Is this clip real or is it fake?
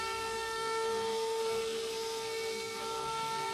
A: fake